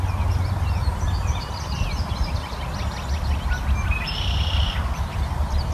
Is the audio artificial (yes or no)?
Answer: no